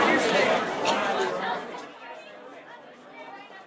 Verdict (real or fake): real